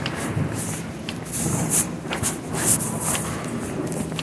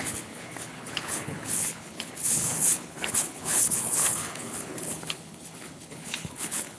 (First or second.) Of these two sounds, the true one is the first